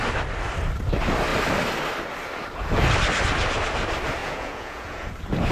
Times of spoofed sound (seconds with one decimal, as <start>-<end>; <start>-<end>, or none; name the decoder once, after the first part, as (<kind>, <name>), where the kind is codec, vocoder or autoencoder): 4.2-5.1 (vocoder, Vocos)